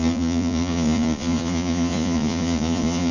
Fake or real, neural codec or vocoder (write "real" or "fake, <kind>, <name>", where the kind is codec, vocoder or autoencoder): fake, vocoder, Vocos